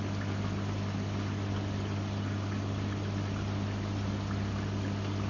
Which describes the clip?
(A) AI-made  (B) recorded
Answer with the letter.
B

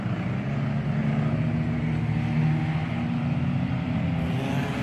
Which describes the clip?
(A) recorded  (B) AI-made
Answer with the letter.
A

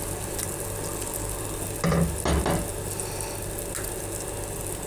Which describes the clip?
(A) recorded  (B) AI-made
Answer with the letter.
A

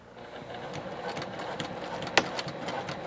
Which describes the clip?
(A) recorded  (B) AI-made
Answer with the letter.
A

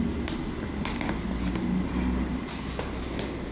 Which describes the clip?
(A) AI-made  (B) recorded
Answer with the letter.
B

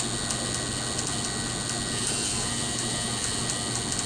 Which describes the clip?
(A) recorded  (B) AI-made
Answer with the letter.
A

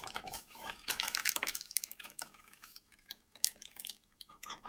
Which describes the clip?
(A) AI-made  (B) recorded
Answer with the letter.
A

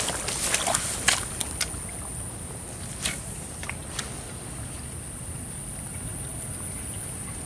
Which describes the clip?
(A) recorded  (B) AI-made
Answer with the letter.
A